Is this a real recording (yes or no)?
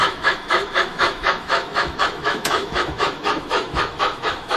no